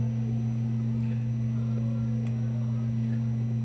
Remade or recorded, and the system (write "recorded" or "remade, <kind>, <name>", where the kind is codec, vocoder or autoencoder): recorded